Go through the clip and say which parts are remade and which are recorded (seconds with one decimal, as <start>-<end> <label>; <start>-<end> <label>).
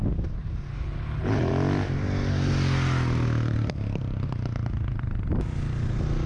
0.0-0.7 recorded; 0.7-1.5 remade; 1.5-6.3 recorded